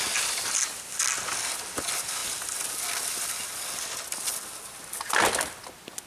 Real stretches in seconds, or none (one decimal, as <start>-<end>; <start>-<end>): 0.0-6.1